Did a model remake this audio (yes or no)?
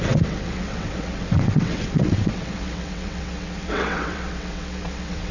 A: yes